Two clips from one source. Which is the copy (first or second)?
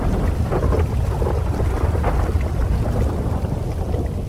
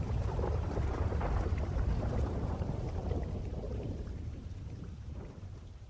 second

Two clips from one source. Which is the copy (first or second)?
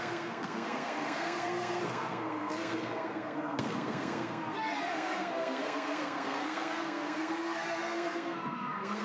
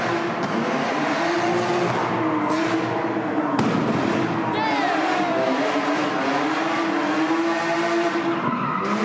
first